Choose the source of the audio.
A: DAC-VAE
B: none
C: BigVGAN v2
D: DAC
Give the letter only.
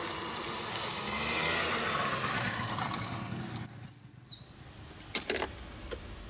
B